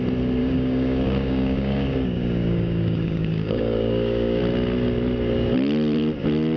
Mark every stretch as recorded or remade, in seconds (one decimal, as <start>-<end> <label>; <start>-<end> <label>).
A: 0.0-0.4 recorded; 0.4-4.4 remade; 4.4-6.6 recorded